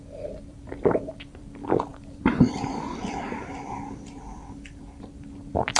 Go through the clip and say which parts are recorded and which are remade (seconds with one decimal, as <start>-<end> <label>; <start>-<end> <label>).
0.0-5.8 remade